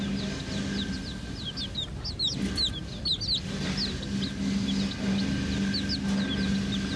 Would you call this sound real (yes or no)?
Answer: yes